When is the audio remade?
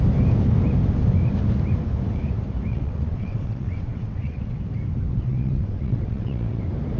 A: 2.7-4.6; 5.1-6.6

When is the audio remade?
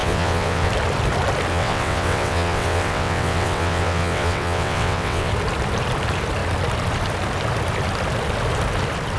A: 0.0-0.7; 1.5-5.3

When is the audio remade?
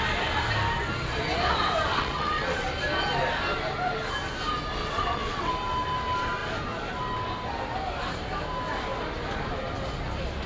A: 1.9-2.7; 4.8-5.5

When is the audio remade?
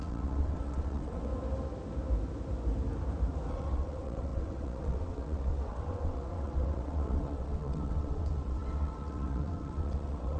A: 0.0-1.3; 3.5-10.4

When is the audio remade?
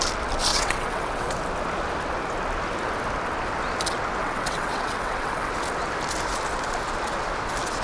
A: 0.5-1.3; 4.2-5.5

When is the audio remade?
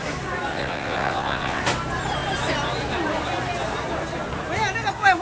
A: 0.5-1.6